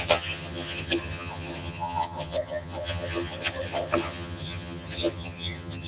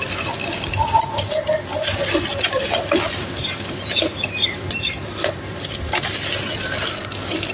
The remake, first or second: first